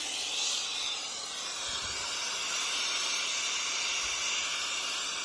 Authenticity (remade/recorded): recorded